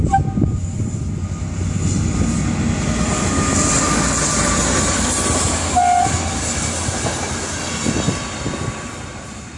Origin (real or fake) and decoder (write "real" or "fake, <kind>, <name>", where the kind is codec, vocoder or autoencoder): real